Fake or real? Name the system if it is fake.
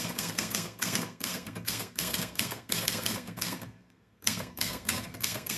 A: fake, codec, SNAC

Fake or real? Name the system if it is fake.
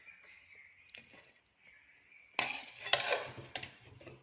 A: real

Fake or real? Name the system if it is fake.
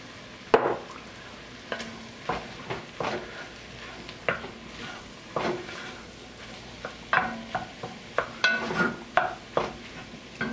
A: real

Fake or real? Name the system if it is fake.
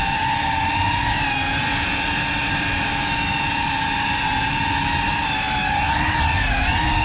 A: real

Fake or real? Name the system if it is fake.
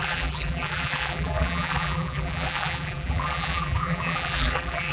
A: fake, vocoder, BigVGAN v2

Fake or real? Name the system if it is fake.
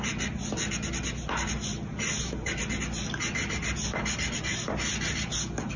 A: real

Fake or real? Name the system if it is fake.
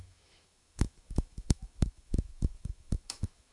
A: fake, autoencoder, DAC-VAE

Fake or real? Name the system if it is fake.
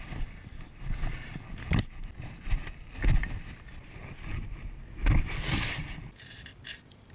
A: real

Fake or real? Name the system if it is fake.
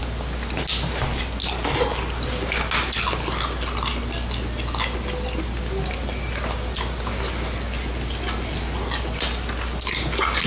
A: real